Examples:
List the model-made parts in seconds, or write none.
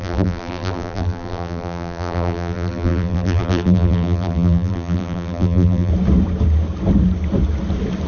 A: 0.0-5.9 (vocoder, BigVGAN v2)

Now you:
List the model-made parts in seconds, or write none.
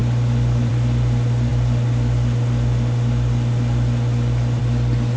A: none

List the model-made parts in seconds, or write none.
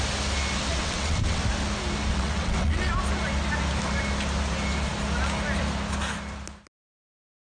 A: 0.7-1.4 (vocoder, WaveNeXt); 2.1-2.9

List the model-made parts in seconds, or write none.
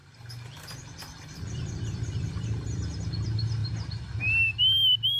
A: 0.0-3.1 (vocoder, BigVGAN v2)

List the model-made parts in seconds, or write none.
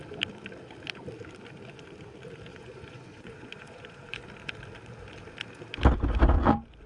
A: 2.5-4.2 (vocoder, Vocos)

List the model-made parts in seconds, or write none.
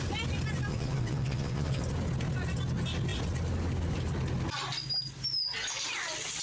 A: 0.7-1.8 (vocoder, WaveNeXt)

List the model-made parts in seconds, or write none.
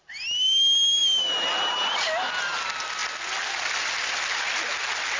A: none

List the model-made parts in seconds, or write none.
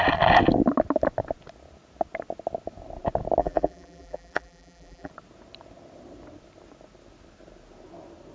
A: 3.4-5.1 (vocoder, BigVGAN v2)